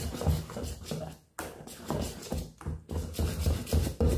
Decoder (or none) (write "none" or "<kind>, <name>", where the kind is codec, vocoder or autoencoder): none